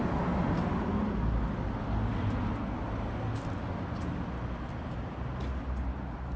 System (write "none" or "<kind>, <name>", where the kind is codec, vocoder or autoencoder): none